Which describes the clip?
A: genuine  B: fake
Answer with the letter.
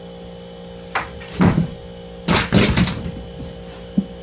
A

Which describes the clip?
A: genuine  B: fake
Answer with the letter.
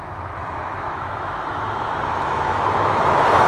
B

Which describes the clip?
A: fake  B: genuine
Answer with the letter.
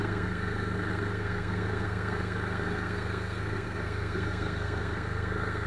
A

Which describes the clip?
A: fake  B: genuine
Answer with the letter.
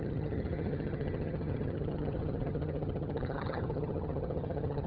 A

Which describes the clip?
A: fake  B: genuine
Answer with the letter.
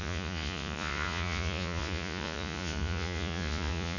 A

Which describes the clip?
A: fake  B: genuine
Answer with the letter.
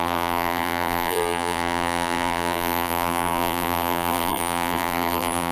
A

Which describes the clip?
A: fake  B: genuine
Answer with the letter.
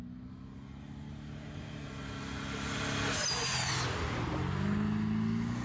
B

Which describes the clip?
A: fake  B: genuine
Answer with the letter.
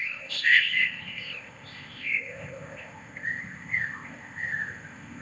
A